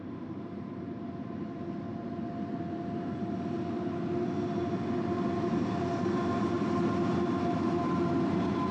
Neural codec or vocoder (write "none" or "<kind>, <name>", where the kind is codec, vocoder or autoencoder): none